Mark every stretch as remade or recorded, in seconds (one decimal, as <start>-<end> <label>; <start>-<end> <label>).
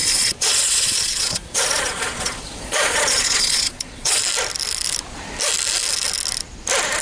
0.0-4.2 remade; 4.2-7.0 recorded